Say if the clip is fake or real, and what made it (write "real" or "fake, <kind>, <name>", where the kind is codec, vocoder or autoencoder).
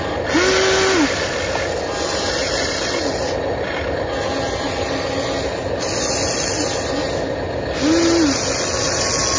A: real